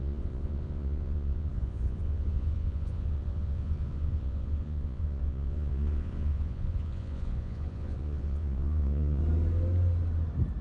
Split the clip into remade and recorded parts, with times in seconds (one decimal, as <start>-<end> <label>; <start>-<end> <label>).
0.0-9.2 remade; 9.2-10.6 recorded